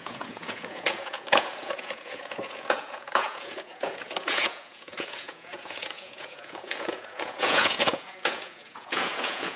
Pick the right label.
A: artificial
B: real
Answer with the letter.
A